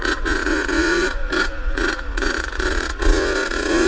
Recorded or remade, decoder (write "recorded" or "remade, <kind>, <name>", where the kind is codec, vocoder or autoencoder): remade, vocoder, Vocos